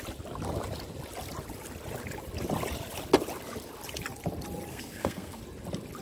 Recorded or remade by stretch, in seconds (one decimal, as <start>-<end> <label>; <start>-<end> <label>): 0.0-4.7 recorded; 4.7-5.4 remade; 5.4-6.0 recorded